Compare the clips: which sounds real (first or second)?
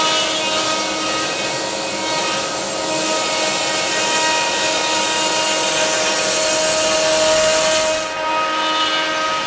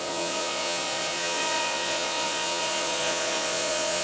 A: first